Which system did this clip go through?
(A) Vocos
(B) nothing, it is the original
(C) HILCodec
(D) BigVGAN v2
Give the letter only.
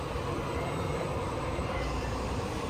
D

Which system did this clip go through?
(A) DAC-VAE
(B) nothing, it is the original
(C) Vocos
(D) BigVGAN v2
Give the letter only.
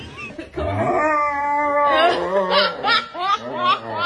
B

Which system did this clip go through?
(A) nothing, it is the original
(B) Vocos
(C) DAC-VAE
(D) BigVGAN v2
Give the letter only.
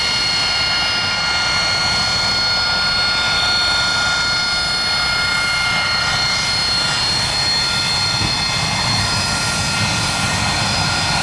A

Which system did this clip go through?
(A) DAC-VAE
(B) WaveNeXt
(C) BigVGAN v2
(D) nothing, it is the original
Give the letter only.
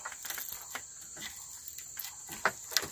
D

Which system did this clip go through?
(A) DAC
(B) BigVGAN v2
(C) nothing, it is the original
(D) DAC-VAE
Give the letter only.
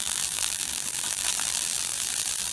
B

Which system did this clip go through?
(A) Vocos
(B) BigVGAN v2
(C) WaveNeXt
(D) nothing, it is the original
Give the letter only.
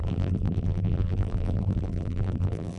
B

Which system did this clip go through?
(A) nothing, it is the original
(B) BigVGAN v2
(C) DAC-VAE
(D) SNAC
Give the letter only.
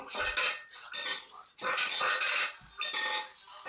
A